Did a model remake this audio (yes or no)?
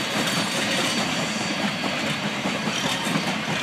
yes